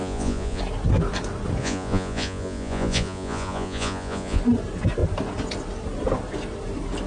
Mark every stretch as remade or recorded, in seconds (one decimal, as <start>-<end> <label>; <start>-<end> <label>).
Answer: 0.0-0.6 remade; 0.6-1.6 recorded; 1.6-4.4 remade; 4.4-7.1 recorded